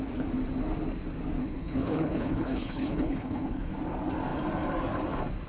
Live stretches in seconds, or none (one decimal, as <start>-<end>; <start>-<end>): 0.0-1.4; 3.7-5.5